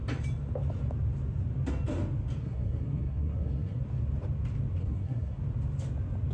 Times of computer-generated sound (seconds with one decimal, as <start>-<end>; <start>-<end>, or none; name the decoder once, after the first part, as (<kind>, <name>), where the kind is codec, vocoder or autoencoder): 2.4-3.8 (codec, SNAC); 4.8-5.4